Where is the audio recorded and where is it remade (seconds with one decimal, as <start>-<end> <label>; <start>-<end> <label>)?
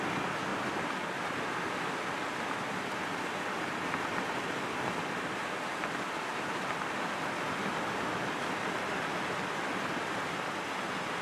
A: 0.0-11.2 recorded